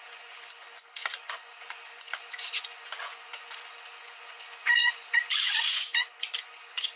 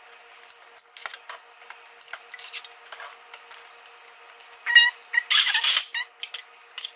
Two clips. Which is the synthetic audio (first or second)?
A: first